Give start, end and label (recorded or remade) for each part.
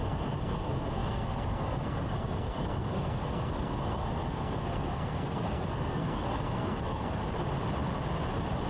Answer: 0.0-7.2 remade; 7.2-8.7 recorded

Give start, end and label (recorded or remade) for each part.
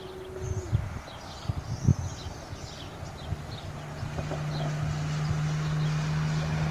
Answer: 0.0-6.7 recorded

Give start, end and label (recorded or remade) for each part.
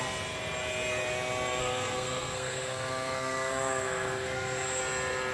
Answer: 0.0-1.6 recorded; 1.6-4.8 remade; 4.8-5.3 recorded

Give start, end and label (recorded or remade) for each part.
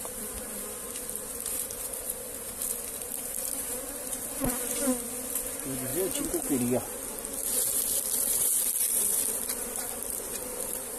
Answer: 0.0-5.9 remade; 5.9-7.7 recorded; 7.7-11.0 remade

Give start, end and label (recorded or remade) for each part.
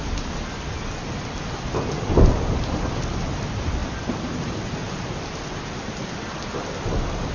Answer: 0.0-3.8 recorded; 3.8-4.7 remade; 4.7-7.3 recorded